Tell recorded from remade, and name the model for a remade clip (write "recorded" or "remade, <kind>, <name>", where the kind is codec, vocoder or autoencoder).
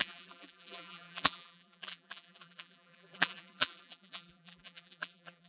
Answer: remade, vocoder, BigVGAN v2